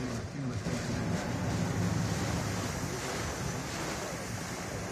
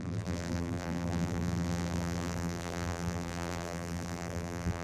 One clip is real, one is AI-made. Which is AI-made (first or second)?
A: second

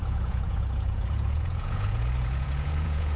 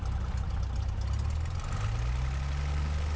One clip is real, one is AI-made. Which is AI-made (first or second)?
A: first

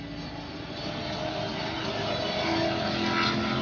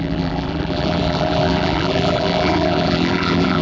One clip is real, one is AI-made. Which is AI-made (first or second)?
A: second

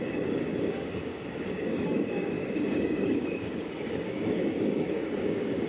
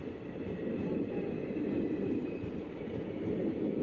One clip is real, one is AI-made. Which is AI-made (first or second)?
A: first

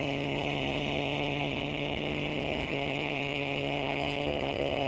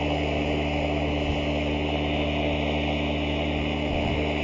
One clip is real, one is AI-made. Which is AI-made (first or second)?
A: first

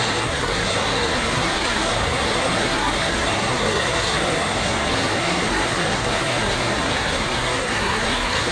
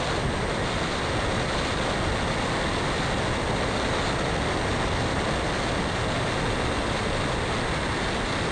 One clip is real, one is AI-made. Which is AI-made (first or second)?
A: first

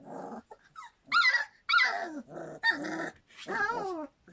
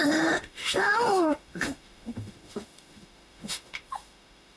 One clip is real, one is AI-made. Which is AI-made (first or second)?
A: second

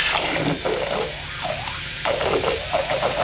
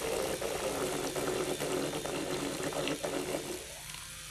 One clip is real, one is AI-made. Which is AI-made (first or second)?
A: first